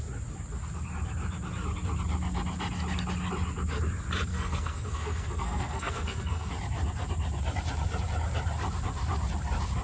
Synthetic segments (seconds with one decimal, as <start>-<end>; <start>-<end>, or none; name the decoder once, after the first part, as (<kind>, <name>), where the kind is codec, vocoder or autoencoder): 4.3-6.5 (codec, SNAC)